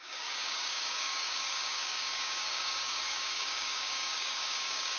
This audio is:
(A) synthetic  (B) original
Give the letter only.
A